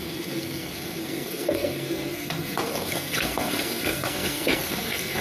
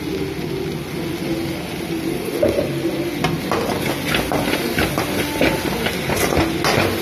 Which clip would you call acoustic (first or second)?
second